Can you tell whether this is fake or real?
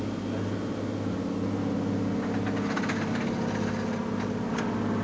real